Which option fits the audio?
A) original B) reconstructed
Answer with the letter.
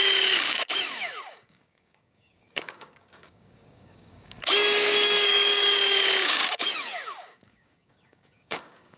B